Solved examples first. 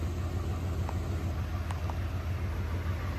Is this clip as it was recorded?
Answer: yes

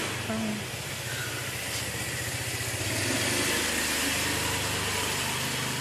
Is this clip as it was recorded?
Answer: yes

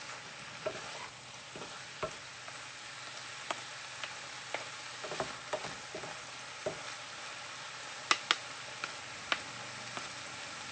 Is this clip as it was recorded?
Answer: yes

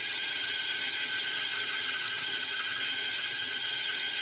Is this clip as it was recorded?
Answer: no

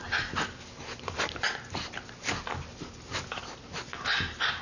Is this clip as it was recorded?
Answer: yes